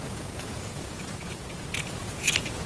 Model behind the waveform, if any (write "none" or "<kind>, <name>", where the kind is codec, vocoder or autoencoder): vocoder, Vocos